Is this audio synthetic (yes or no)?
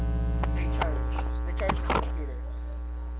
no